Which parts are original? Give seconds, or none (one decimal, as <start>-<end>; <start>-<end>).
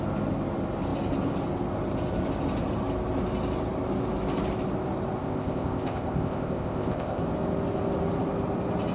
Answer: 0.0-5.2; 7.2-8.9